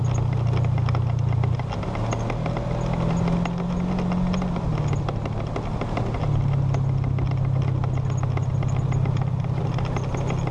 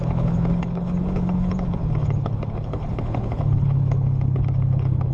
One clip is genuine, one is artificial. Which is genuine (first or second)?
first